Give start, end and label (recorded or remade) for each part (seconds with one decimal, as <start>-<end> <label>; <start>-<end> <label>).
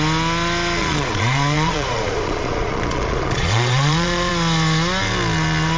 0.0-0.8 recorded; 0.8-4.3 remade; 4.3-5.8 recorded